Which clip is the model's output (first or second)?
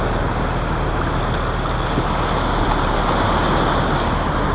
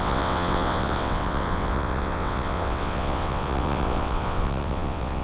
second